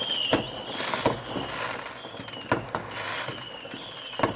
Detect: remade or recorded recorded